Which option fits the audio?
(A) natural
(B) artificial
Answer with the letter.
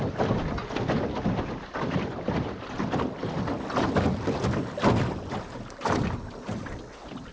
A